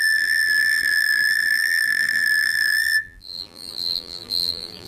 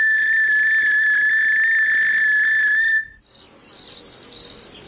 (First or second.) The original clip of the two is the second